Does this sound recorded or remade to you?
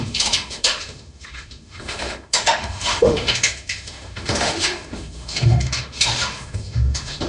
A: remade